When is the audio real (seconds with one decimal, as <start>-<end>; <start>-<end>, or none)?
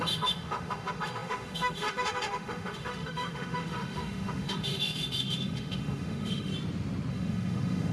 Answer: 6.5-7.1